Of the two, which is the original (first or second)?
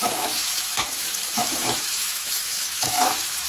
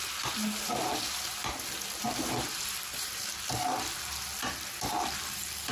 second